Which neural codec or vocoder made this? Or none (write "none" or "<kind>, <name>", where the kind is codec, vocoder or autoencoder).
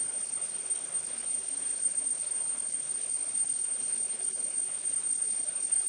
codec, HILCodec